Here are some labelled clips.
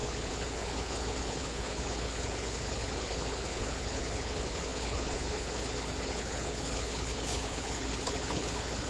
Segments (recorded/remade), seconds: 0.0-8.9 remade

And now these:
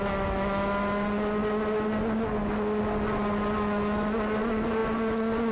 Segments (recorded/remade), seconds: 0.0-5.5 recorded

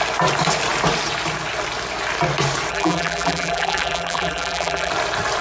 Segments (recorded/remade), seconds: 0.0-2.7 recorded; 2.7-4.9 remade; 4.9-5.4 recorded

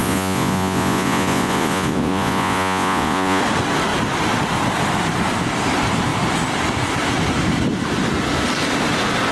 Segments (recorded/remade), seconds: 0.0-3.4 remade; 3.4-9.3 recorded

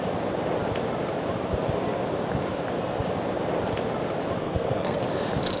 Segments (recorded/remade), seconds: 0.0-4.4 recorded; 4.4-5.0 remade; 5.0-5.6 recorded